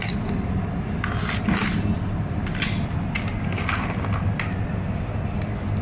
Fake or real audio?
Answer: real